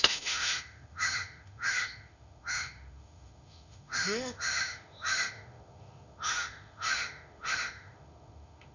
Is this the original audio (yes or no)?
no